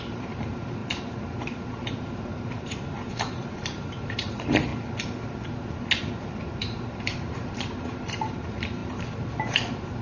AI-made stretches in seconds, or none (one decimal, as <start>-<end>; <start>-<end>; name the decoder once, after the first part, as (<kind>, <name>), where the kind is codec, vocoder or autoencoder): 0.0-0.8 (vocoder, BigVGAN v2); 1.8-4.7; 6.5-10.0